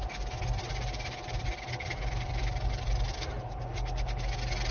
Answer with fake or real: real